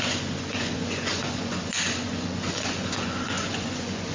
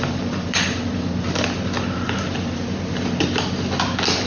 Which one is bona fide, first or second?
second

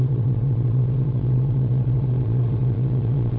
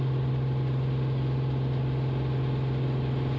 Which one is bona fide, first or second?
second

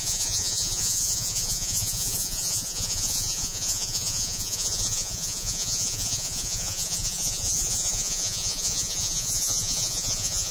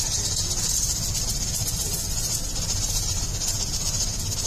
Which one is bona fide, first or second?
second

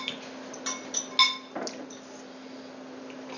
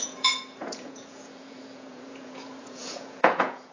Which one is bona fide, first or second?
first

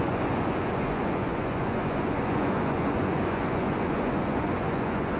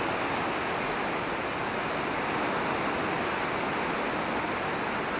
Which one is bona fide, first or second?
second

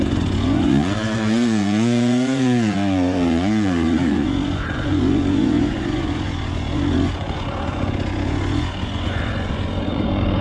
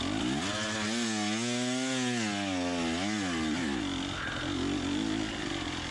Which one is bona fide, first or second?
second